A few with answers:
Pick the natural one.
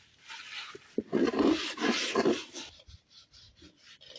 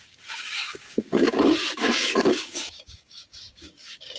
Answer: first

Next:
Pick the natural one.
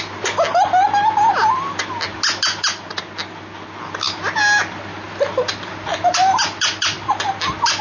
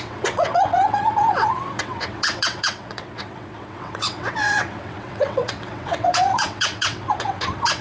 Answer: first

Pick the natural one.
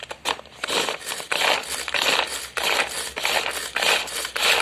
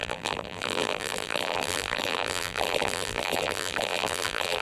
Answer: first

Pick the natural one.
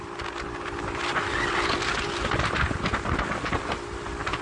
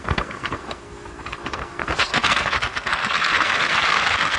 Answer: first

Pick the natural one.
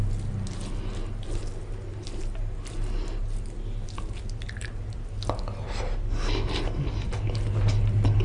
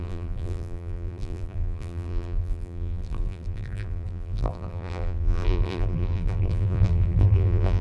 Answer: first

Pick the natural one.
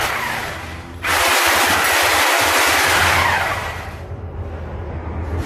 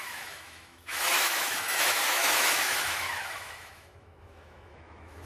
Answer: first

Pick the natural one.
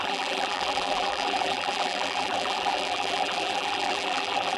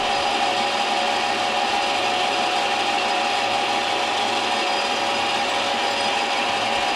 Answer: second